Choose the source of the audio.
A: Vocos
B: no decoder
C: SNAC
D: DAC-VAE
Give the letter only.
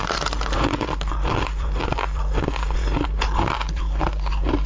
B